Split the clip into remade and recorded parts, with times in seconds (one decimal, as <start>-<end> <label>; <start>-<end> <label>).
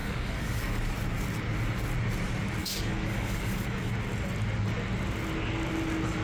0.0-0.8 remade; 0.8-2.6 recorded; 2.6-3.9 remade; 3.9-6.2 recorded